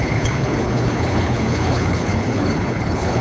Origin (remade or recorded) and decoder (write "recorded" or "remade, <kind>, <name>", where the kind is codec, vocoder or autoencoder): remade, codec, HILCodec